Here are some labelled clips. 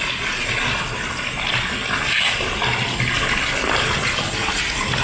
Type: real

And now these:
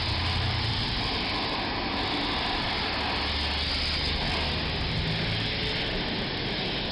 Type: real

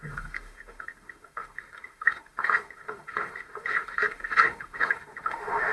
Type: fake